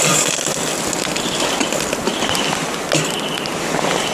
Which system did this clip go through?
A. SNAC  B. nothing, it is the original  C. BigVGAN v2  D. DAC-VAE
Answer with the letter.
B